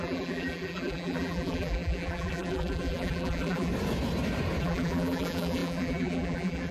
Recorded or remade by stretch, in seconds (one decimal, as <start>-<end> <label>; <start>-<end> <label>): 0.0-3.7 remade; 3.7-4.6 recorded; 4.6-6.7 remade

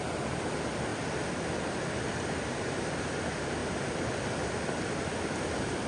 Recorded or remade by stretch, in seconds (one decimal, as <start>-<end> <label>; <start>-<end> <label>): 0.0-0.9 recorded; 0.9-2.0 remade; 2.0-3.6 recorded; 3.6-5.0 remade; 5.0-5.9 recorded

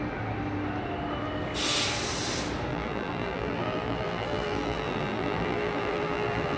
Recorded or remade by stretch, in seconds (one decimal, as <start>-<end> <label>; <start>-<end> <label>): 0.0-2.7 recorded; 2.7-6.6 remade